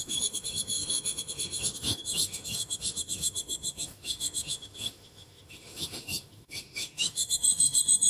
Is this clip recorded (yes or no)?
no